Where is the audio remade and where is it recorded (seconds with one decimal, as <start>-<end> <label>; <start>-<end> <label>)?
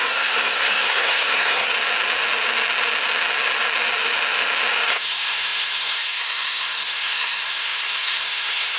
0.0-1.7 remade; 1.7-4.9 recorded; 4.9-8.8 remade